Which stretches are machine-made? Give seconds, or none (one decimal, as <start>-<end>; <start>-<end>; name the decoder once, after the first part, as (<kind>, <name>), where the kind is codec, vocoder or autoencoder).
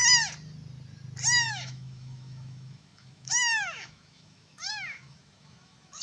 1.5-6.0 (autoencoder, DAC-VAE)